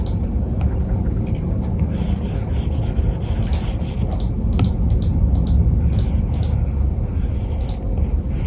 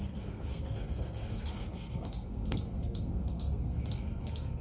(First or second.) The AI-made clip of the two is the second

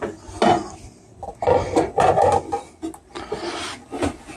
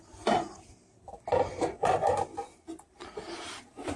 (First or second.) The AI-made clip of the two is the second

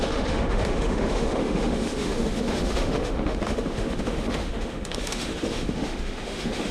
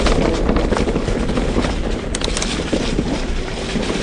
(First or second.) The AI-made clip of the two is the first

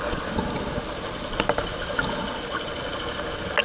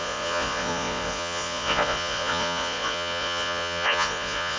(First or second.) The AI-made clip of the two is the second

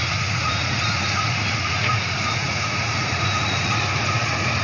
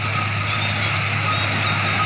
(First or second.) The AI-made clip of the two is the first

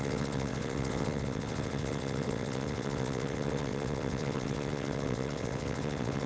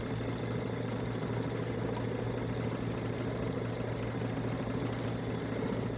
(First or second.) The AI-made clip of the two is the first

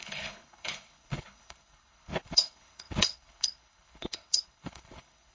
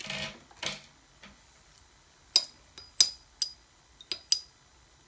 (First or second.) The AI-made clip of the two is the first